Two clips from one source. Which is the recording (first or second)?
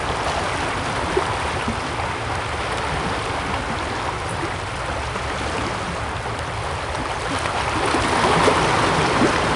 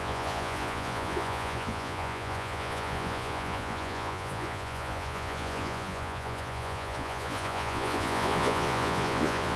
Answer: first